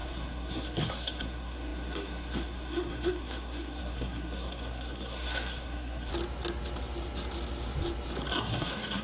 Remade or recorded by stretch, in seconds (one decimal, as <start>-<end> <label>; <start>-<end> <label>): 0.0-6.1 remade; 6.1-8.4 recorded; 8.4-9.0 remade